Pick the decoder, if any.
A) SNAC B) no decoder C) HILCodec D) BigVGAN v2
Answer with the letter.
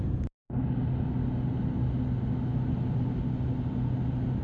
B